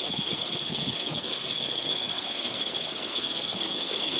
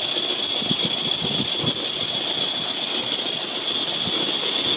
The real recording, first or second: second